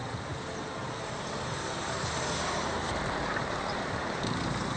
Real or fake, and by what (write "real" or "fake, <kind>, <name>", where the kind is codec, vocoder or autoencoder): fake, vocoder, BigVGAN v2